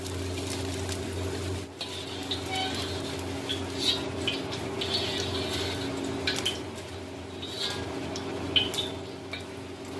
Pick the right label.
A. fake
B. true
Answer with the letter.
B